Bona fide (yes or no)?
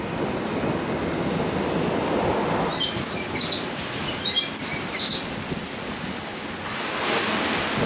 yes